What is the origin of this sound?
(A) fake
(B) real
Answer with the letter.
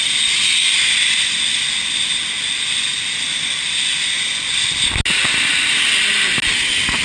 B